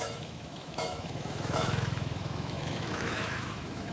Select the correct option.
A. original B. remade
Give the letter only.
B